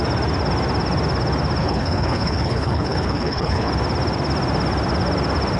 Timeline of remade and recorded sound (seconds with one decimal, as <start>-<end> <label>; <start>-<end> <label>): 0.0-1.6 recorded; 1.6-3.7 remade; 3.7-5.6 recorded